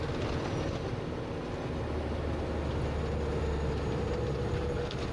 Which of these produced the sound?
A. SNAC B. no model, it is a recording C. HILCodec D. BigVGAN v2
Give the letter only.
B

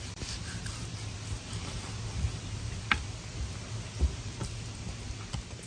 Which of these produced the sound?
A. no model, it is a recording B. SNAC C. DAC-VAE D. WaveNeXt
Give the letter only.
A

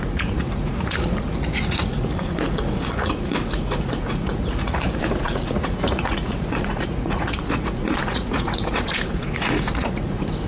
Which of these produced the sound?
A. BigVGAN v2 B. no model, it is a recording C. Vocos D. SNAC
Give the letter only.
C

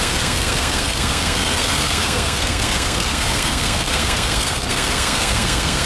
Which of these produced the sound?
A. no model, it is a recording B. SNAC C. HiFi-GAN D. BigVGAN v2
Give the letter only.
B